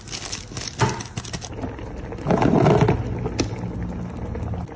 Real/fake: real